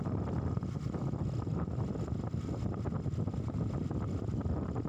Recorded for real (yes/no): yes